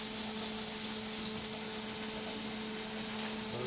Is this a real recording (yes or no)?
yes